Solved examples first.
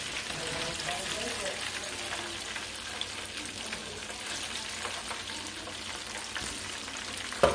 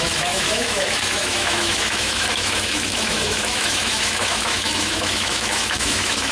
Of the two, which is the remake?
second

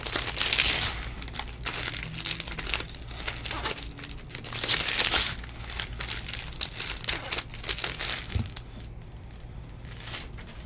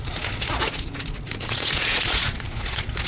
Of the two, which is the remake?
second